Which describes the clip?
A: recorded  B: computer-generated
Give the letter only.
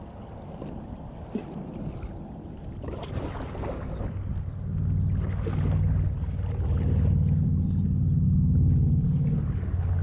A